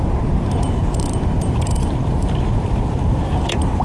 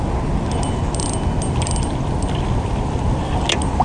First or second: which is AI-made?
first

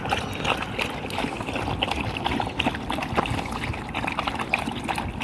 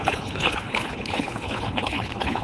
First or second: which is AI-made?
second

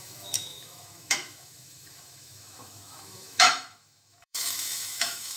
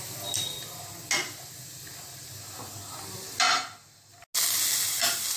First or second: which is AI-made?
first